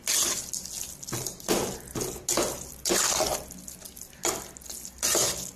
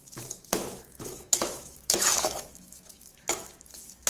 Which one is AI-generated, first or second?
second